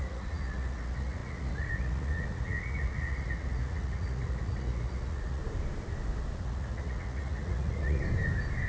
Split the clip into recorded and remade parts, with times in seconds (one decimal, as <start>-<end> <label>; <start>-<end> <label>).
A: 0.0-5.4 remade; 5.4-6.4 recorded; 6.4-8.0 remade; 8.0-8.7 recorded